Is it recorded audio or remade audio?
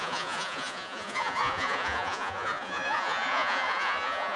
remade